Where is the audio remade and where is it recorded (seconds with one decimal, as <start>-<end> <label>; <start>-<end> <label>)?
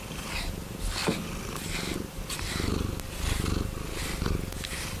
0.0-5.0 recorded